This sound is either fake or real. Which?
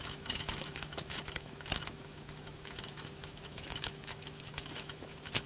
fake